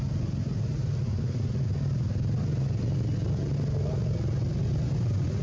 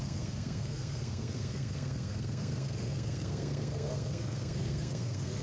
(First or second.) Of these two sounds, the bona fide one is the first